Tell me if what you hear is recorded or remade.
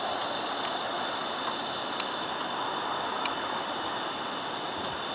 recorded